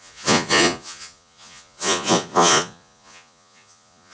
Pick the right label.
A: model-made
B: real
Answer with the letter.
A